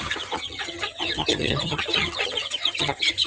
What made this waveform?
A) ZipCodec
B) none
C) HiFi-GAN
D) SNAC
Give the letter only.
C